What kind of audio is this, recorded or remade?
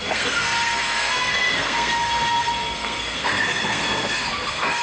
remade